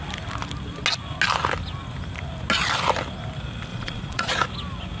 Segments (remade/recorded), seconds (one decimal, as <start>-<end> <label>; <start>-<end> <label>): 0.0-3.7 recorded; 3.7-4.3 remade; 4.3-5.0 recorded